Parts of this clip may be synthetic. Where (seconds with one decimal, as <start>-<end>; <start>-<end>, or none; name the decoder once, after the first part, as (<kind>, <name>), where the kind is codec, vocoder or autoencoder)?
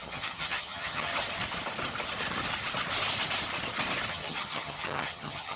0.0-1.1 (vocoder, HiFi-GAN); 4.1-5.6